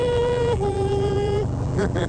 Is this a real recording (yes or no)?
no